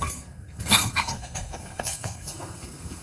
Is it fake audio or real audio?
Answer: fake